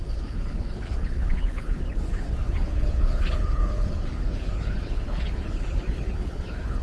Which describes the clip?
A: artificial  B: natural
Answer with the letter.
A